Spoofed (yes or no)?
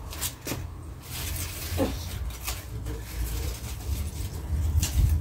no